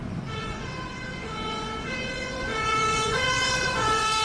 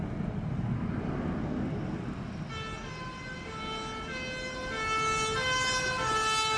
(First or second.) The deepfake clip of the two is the first